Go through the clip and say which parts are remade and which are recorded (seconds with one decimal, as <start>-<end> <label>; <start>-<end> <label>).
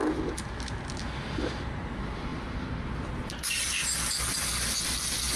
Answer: 0.0-5.4 recorded